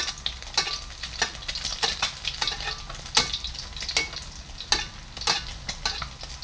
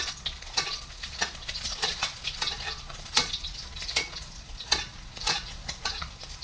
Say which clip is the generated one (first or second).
second